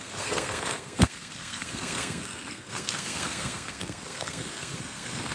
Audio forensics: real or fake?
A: fake